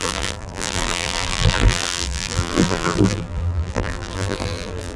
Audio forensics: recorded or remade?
remade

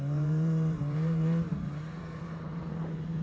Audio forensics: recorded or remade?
remade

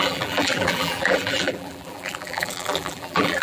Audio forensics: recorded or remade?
remade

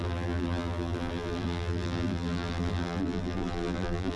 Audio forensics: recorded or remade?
remade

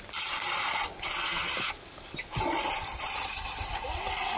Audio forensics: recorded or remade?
remade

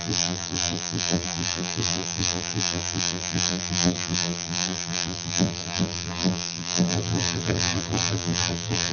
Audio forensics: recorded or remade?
remade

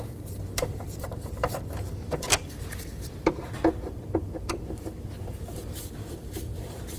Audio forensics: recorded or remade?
remade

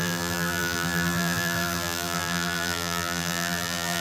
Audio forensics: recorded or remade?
remade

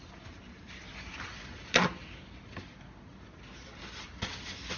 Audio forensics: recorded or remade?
recorded